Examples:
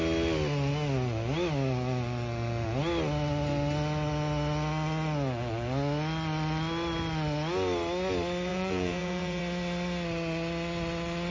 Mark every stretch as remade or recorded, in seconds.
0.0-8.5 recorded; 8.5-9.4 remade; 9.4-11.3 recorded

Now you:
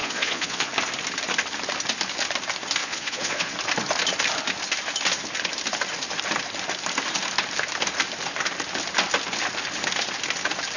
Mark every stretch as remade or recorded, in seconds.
0.0-0.7 remade; 0.7-2.8 recorded; 2.8-3.5 remade; 3.5-10.8 recorded

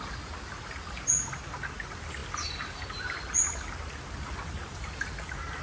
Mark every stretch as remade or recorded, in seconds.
0.0-5.6 recorded

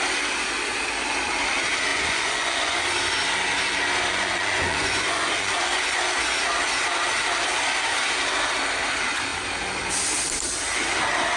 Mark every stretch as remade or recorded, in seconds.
0.0-1.9 recorded; 1.9-2.8 remade; 2.8-4.1 recorded; 4.1-6.0 remade; 6.0-11.4 recorded

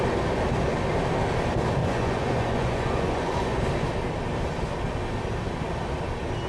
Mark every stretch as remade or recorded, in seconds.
0.0-1.8 recorded; 1.8-3.6 remade; 3.6-6.5 recorded

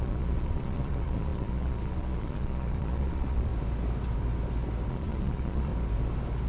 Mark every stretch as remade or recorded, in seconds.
0.0-3.5 remade; 3.5-4.9 recorded; 4.9-5.7 remade; 5.7-6.5 recorded

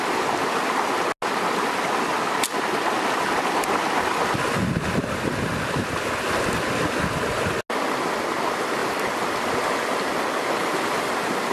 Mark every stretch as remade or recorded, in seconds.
0.0-11.5 recorded